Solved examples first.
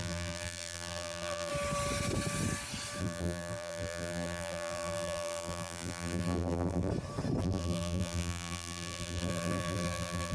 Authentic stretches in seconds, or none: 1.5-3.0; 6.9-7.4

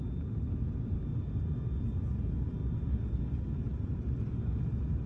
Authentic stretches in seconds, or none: 0.0-5.1

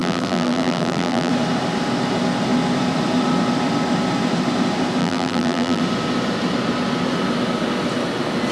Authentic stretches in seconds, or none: 1.3-5.0; 5.8-8.5